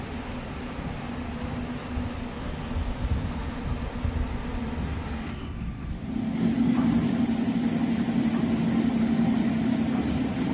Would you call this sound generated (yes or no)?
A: no